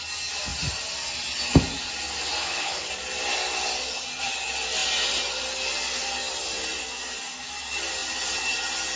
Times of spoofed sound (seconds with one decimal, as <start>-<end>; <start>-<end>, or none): 2.4-2.9